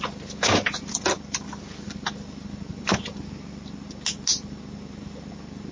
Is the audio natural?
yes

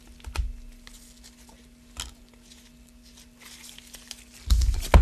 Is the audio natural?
yes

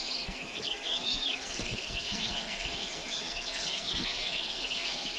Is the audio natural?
no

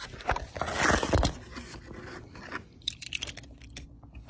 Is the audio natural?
yes